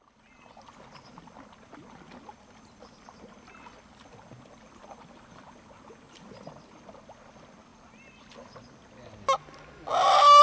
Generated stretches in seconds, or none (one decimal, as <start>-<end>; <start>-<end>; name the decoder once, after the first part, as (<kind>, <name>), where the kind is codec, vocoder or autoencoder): none